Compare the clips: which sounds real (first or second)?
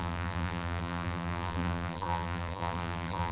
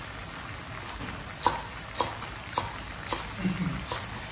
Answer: second